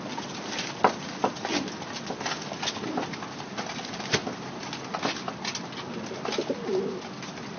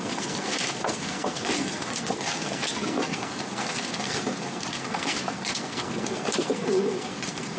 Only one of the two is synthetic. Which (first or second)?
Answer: second